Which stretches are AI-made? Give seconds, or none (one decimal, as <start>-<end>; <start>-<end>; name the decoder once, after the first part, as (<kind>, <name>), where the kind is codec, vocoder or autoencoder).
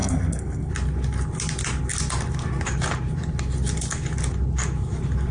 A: 0.0-0.7 (codec, SNAC)